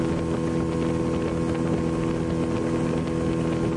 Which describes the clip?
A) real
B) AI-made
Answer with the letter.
A